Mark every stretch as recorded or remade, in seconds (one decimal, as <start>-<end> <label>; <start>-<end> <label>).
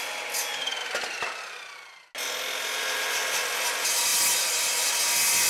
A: 0.0-0.8 recorded; 0.8-2.1 remade; 2.1-5.5 recorded